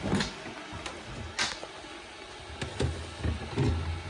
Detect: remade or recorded recorded